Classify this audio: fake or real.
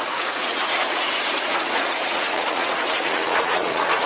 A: fake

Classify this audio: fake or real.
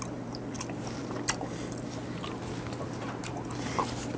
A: real